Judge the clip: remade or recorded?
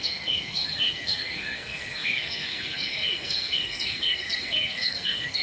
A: remade